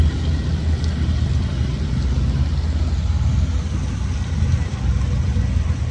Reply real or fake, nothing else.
real